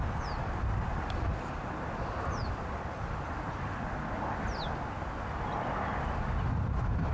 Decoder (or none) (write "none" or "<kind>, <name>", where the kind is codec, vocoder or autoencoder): none